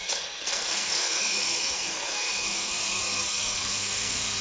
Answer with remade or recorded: remade